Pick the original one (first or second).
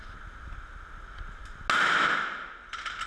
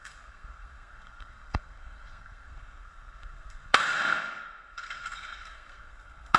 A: first